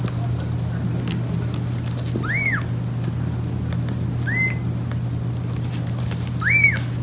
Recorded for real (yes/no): yes